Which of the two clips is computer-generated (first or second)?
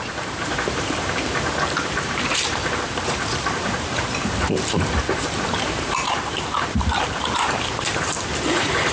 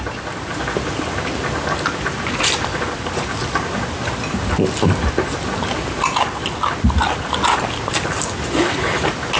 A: first